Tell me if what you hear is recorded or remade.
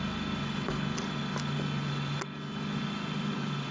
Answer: recorded